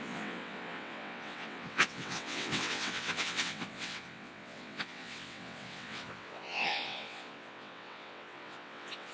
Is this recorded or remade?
remade